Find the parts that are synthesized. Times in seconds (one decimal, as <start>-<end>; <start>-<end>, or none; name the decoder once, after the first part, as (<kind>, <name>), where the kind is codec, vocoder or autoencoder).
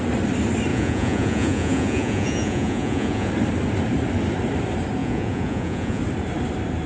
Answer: 0.7-3.3 (vocoder, Vocos); 5.0-6.0